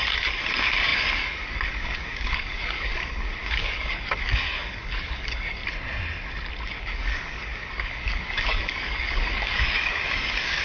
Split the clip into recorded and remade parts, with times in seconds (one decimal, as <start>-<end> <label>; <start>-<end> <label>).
0.0-5.6 remade; 5.6-6.8 recorded; 6.8-10.6 remade